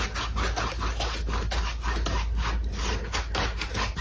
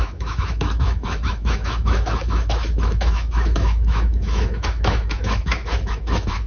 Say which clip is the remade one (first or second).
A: second